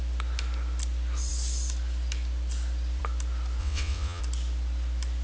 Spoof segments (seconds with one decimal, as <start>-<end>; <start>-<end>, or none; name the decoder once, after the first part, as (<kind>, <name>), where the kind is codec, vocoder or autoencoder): 3.6-4.2 (vocoder, WaveNeXt)